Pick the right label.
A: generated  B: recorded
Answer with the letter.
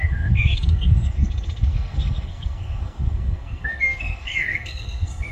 A